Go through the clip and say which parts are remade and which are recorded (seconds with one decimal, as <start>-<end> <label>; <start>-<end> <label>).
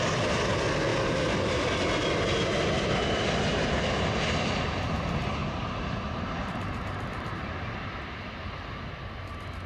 0.0-5.4 recorded; 5.4-7.5 remade; 7.5-9.7 recorded